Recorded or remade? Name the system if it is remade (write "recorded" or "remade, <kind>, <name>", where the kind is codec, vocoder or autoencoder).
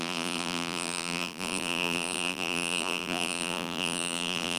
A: remade, vocoder, BigVGAN v2